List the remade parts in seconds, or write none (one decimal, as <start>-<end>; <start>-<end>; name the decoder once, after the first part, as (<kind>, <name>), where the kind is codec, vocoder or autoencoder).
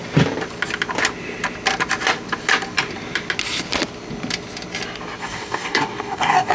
5.2-6.5 (codec, DAC)